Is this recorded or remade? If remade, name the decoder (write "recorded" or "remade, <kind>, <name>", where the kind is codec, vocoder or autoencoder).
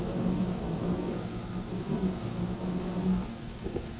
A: remade, codec, SNAC